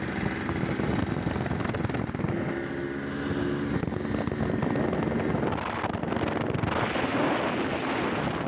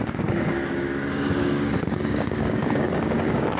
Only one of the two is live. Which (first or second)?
first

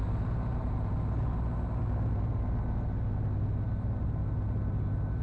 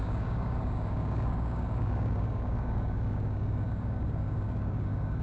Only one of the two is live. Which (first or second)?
first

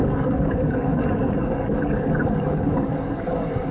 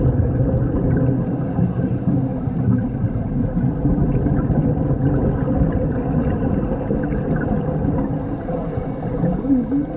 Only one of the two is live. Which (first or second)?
second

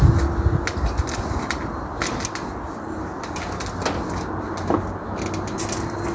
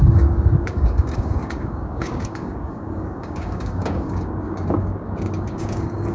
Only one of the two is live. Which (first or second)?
first